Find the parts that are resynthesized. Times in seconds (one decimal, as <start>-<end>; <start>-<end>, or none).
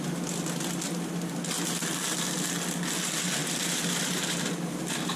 none